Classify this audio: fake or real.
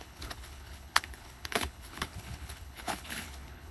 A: fake